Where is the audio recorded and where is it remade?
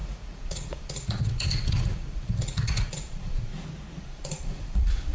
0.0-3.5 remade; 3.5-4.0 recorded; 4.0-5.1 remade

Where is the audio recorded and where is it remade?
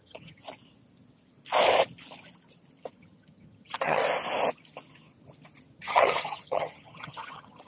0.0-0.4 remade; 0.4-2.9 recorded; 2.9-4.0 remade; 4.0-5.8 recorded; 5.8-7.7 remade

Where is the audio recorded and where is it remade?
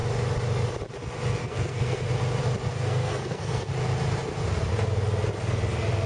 0.0-1.4 recorded; 1.4-2.1 remade; 2.1-2.7 recorded; 2.7-3.7 remade; 3.7-6.1 recorded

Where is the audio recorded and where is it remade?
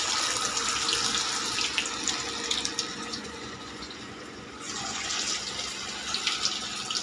0.0-2.9 recorded; 2.9-5.1 remade; 5.1-7.0 recorded